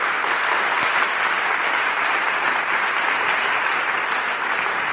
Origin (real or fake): real